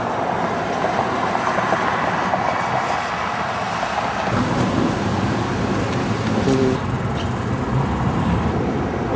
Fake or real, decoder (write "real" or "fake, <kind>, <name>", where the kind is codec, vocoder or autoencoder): real